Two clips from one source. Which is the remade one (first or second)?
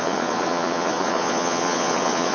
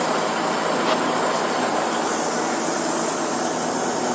first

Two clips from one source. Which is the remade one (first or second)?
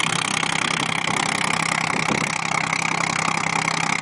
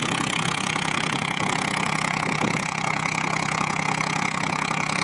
second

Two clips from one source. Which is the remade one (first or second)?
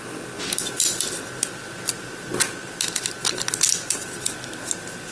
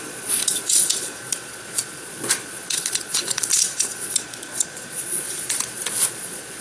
second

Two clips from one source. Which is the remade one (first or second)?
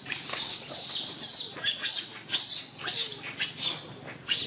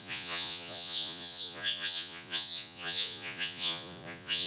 second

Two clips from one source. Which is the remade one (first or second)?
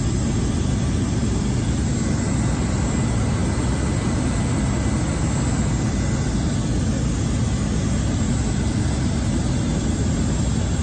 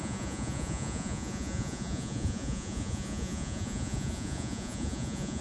second